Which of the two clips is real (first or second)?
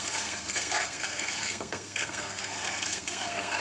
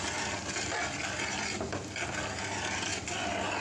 second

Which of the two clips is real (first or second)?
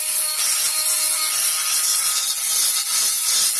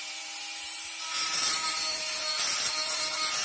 first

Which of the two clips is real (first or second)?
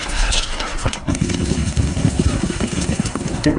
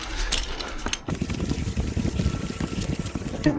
second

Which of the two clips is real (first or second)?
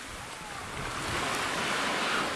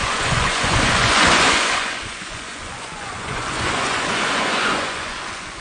first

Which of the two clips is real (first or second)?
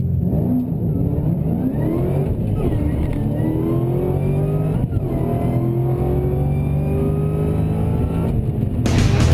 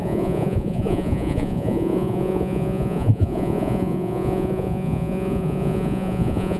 first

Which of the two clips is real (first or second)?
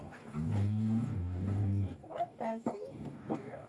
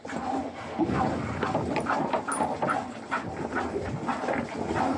second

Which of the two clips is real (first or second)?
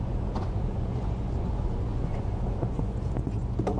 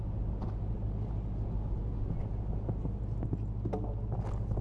second